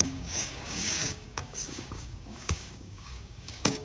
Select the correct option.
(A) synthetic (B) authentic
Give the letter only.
A